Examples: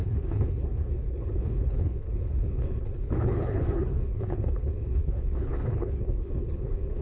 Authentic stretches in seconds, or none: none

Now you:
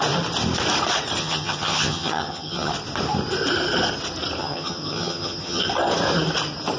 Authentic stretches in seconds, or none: 0.0-1.2; 2.7-4.4; 5.7-6.8

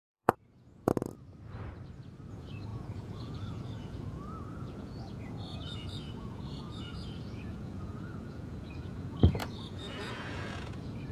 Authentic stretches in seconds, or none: 0.9-2.3